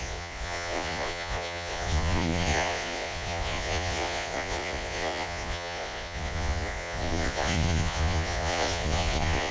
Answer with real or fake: fake